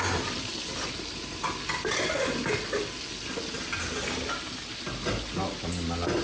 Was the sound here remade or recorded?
recorded